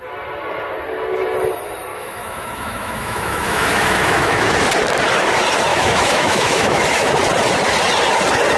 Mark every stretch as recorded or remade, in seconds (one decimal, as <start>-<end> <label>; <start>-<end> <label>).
0.0-1.9 recorded; 1.9-4.6 remade; 4.6-5.7 recorded; 5.7-7.1 remade; 7.1-8.6 recorded